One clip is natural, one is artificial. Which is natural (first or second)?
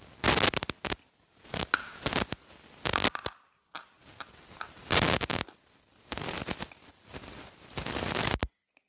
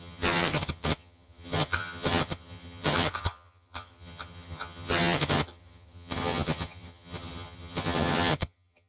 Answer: first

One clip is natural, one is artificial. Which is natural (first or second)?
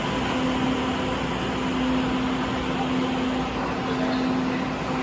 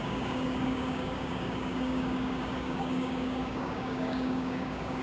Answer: first